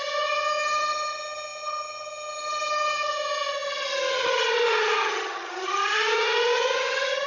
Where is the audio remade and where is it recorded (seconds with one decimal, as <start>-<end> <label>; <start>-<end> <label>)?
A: 0.0-7.3 remade